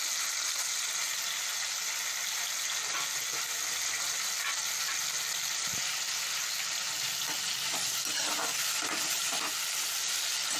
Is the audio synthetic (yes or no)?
no